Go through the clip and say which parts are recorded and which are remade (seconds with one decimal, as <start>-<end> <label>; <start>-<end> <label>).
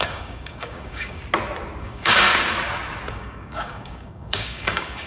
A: 0.0-1.2 remade; 1.2-1.8 recorded; 1.8-2.3 remade; 2.3-3.1 recorded; 3.1-5.1 remade